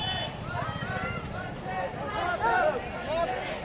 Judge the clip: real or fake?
real